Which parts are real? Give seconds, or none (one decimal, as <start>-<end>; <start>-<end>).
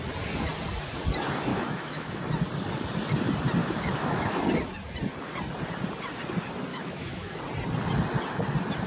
0.0-1.5; 2.2-3.6; 4.4-6.7; 7.4-8.9